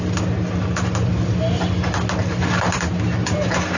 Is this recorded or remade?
recorded